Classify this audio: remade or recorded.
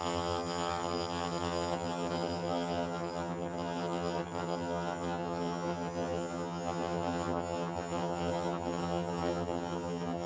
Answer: remade